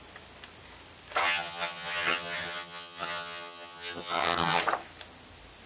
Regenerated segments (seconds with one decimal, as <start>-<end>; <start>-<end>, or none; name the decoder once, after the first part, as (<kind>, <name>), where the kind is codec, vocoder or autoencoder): 1.2-4.6 (vocoder, HiFi-GAN)

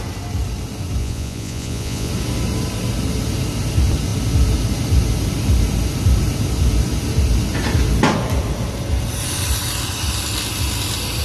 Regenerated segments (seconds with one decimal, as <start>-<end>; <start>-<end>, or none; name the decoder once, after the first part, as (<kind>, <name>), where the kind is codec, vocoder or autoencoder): 1.0-2.1 (vocoder, Vocos)

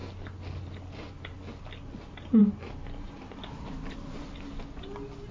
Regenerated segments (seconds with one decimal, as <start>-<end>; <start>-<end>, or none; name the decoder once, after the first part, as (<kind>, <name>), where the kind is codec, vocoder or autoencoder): none